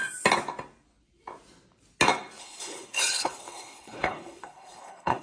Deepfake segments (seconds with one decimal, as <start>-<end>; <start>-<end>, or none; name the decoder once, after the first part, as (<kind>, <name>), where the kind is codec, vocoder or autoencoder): 2.4-5.2 (codec, HILCodec)